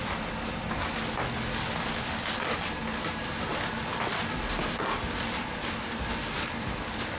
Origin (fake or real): real